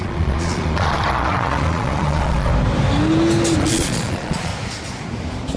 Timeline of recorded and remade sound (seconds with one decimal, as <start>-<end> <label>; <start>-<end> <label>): 0.0-2.5 remade; 2.5-3.6 recorded; 3.6-4.5 remade; 4.5-5.6 recorded